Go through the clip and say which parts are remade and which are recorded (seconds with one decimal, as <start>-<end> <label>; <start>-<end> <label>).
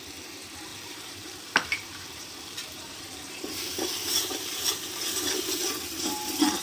0.0-0.7 recorded; 0.7-4.7 remade; 4.7-6.6 recorded